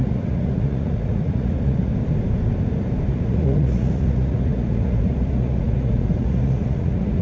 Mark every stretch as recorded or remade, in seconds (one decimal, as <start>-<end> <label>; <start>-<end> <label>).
0.0-1.9 remade; 1.9-3.1 recorded; 3.1-7.2 remade